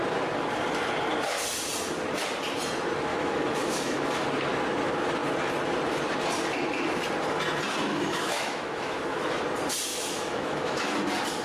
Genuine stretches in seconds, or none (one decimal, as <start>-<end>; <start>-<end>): 0.0-3.1; 4.2-7.9; 9.4-9.9; 11.0-11.4